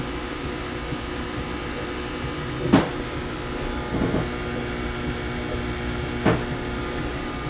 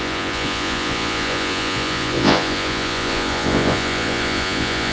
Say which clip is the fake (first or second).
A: second